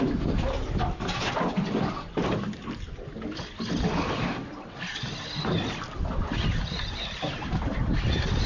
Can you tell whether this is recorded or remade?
recorded